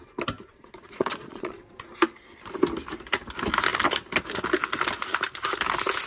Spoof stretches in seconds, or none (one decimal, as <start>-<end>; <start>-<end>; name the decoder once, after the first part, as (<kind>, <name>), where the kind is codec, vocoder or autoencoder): 0.5-1.9 (vocoder, Vocos)